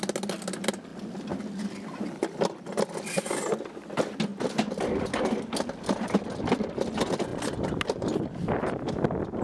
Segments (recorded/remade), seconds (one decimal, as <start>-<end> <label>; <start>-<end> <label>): 0.0-9.4 recorded